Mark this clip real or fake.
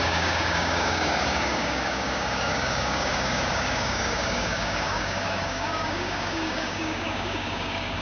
fake